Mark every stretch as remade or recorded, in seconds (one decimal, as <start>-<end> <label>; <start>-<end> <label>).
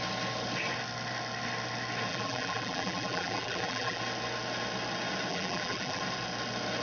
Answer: 0.0-2.1 recorded; 2.1-4.0 remade; 4.0-5.3 recorded; 5.3-6.0 remade; 6.0-6.8 recorded